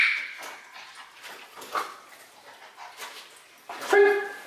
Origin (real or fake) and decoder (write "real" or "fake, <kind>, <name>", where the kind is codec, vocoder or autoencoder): real